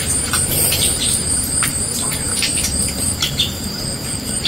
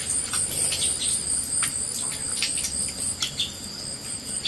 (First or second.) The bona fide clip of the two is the second